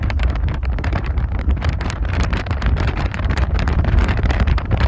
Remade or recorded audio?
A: remade